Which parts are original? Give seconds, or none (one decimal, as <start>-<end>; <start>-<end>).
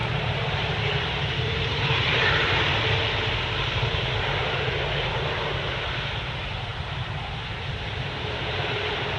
2.7-5.7